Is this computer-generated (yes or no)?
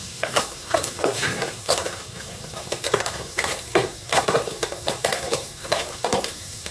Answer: yes